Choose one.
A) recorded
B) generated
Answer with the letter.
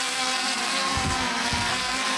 B